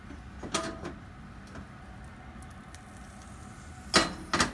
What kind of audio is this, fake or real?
real